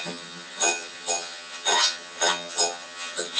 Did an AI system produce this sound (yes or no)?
yes